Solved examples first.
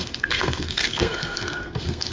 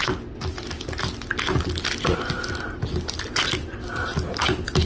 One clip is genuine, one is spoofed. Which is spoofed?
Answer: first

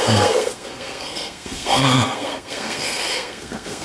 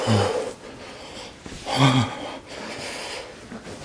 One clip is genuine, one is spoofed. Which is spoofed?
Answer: first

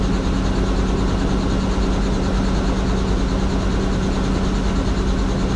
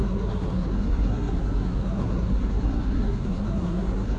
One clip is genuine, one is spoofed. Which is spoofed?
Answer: second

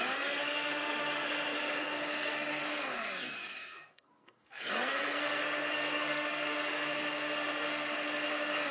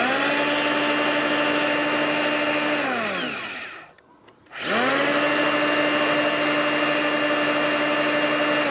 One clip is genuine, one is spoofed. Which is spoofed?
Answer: first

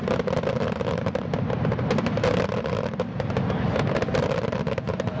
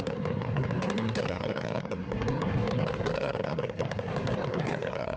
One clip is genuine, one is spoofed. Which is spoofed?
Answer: second